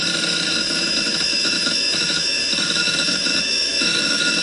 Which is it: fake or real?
fake